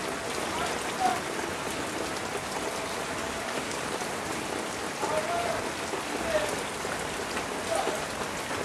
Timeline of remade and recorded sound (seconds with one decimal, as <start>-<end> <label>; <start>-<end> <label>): 0.0-3.2 recorded; 3.2-3.8 remade; 3.8-8.6 recorded